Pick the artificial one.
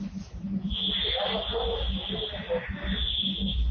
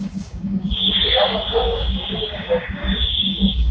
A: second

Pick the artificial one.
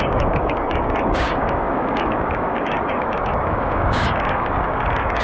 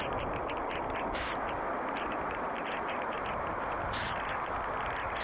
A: first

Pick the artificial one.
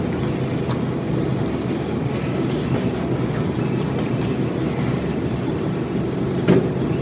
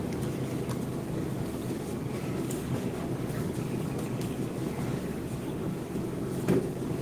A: second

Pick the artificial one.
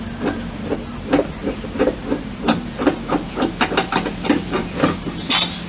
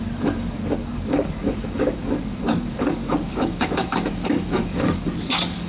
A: second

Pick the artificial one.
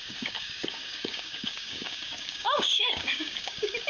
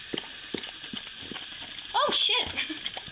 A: first